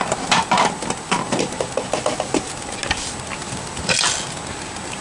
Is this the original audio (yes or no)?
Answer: yes